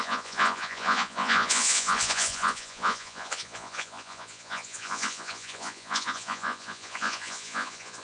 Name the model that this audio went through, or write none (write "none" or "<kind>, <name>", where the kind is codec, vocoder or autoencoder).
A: vocoder, Vocos